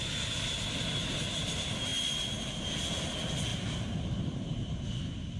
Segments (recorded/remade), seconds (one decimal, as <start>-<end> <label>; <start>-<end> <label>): 0.0-3.5 recorded; 3.5-4.8 remade; 4.8-5.4 recorded